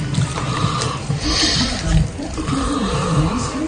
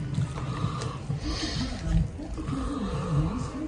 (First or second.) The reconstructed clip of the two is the first